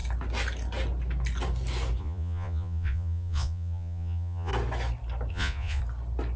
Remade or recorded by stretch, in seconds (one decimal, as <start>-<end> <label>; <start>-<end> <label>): 0.0-2.0 recorded; 2.0-4.5 remade; 4.5-5.3 recorded; 5.3-5.8 remade; 5.8-6.4 recorded